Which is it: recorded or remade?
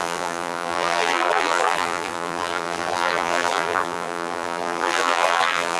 remade